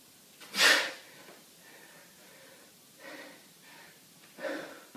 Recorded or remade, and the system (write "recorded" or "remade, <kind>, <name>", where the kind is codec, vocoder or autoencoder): recorded